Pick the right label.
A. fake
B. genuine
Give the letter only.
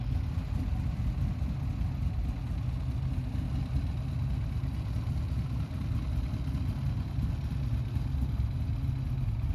B